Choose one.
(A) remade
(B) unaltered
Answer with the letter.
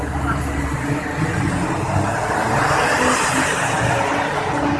B